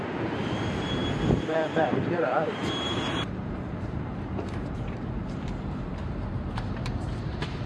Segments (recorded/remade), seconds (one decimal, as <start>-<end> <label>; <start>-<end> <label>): 0.0-7.7 remade